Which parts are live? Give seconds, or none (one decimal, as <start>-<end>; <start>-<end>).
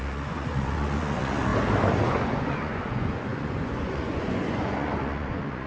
1.5-2.1